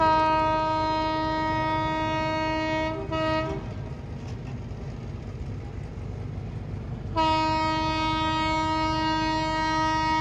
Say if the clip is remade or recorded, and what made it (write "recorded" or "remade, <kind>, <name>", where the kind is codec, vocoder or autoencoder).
recorded